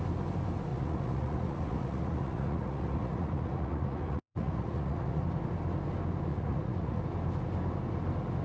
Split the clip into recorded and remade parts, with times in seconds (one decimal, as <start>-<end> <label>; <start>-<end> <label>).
0.0-0.7 recorded; 0.7-5.2 remade; 5.2-6.3 recorded; 6.3-7.0 remade; 7.0-8.4 recorded